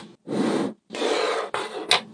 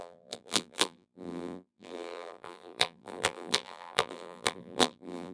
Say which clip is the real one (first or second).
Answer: first